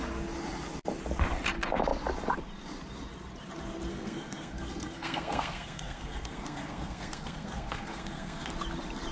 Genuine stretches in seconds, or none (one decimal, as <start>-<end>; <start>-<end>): 0.0-3.9; 8.5-9.1